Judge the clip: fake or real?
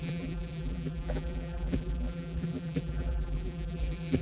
fake